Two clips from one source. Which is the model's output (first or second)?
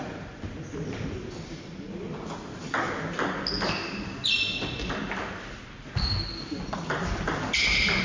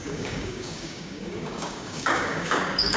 second